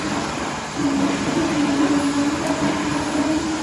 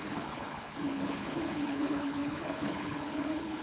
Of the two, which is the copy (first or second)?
second